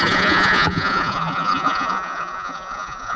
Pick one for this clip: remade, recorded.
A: remade